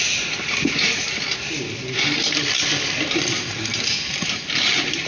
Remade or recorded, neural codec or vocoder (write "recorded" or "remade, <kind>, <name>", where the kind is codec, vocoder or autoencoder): recorded